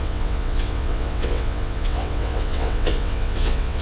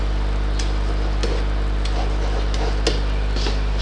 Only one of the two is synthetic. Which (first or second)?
first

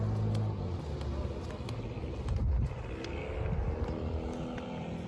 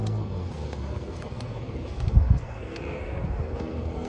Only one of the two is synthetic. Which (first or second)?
second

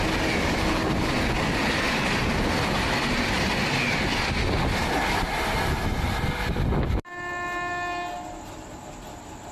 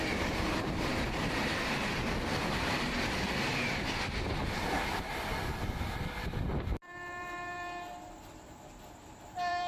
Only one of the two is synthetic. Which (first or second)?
second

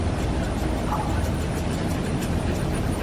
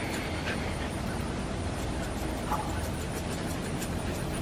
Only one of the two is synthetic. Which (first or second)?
first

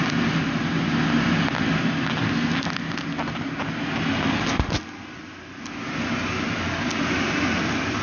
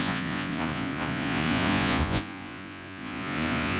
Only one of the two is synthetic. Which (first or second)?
second